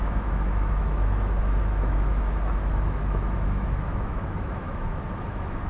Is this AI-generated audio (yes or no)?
yes